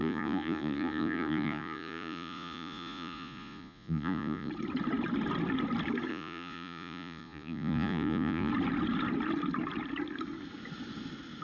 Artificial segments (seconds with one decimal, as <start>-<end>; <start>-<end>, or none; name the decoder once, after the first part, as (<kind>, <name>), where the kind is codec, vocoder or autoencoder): 0.0-4.5 (vocoder, Vocos); 6.1-8.5